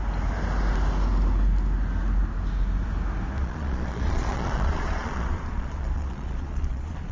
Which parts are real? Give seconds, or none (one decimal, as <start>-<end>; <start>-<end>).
0.0-3.4